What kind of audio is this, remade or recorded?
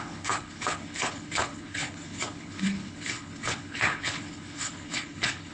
remade